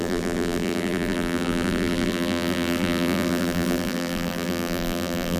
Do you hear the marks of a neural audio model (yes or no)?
yes